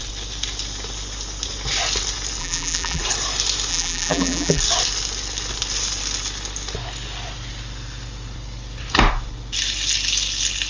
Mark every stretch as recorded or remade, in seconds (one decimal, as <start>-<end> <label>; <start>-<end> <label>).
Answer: 0.0-2.4 recorded; 2.4-3.0 remade; 3.0-3.7 recorded; 3.7-4.6 remade; 4.6-10.7 recorded